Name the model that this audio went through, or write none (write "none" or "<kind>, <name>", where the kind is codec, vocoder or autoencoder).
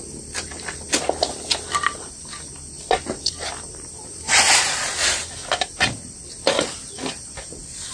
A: none